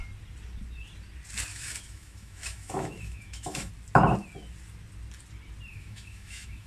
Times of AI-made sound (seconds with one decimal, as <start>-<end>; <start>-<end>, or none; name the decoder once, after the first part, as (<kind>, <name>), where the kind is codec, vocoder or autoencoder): 1.5-3.7 (autoencoder, DAC-VAE); 5.7-6.7